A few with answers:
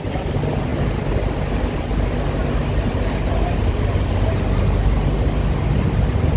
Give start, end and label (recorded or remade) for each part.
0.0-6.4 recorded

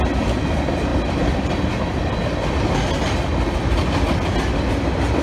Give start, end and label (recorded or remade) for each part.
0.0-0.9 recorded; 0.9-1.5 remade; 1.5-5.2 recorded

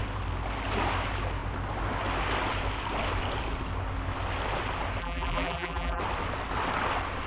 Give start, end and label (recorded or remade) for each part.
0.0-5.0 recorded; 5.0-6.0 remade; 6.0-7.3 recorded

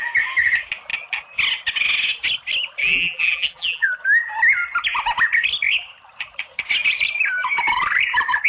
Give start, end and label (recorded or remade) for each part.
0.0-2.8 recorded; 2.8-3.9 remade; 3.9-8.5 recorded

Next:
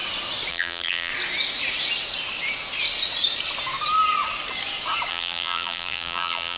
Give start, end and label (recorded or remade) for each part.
0.0-0.5 recorded; 0.5-1.1 remade; 1.1-5.1 recorded; 5.1-6.6 remade